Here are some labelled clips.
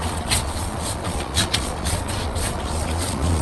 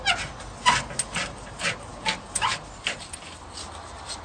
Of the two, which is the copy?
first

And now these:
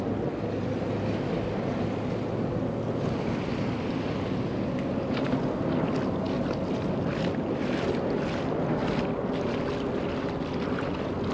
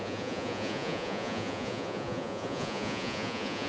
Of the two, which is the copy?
second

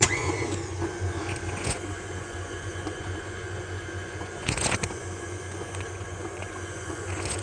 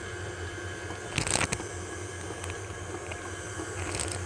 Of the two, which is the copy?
first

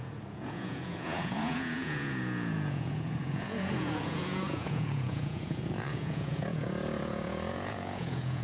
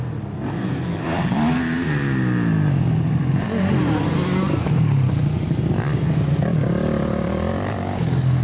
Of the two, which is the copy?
first